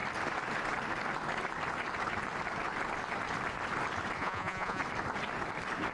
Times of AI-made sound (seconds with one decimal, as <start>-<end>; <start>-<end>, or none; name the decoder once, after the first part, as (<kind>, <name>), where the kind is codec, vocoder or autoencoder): 4.2-4.8 (vocoder, Vocos)